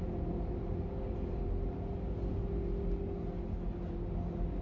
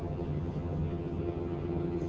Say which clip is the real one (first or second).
first